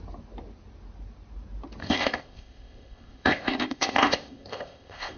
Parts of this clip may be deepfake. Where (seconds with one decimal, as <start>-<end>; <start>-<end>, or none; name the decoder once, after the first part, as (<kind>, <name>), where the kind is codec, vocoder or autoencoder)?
1.8-5.2 (codec, ZipCodec)